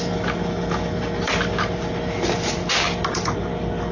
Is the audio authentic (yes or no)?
yes